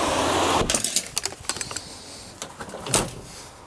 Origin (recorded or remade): recorded